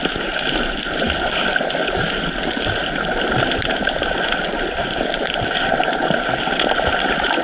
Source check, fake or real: real